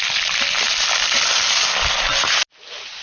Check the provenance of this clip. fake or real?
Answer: real